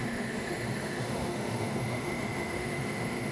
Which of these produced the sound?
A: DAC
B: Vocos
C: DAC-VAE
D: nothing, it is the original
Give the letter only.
C